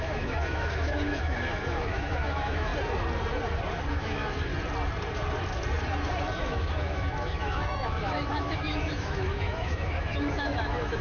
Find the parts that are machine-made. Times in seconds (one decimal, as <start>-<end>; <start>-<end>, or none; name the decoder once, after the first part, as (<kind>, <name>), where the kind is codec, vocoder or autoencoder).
0.0-2.7 (autoencoder, DAC-VAE); 3.9-4.5; 6.4-11.0